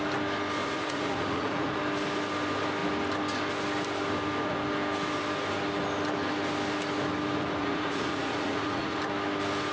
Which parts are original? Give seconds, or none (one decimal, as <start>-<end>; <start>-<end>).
0.0-0.6; 1.8-7.6; 9.0-9.7